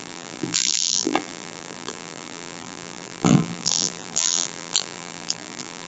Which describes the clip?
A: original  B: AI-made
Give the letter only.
B